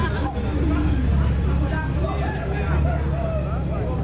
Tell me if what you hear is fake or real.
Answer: real